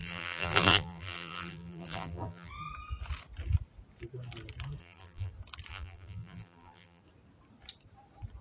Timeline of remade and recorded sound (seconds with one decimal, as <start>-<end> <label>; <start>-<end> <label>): 0.0-2.5 remade; 2.5-4.8 recorded; 4.8-5.3 remade; 5.3-5.7 recorded; 5.7-7.0 remade; 7.0-8.4 recorded